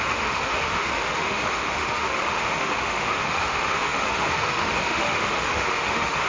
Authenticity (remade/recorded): remade